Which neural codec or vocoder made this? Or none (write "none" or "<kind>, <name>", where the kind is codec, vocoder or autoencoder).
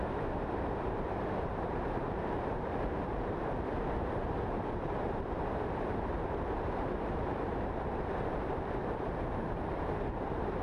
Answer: vocoder, BigVGAN v2